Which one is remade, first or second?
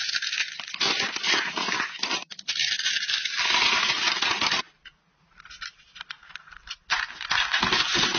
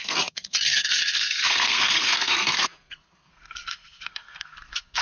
second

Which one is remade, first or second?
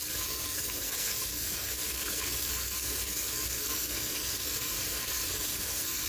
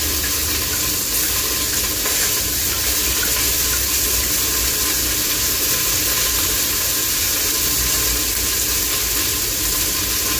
first